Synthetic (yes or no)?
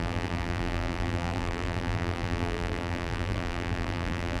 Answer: yes